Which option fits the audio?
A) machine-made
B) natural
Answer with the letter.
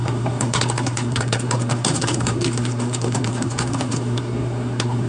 A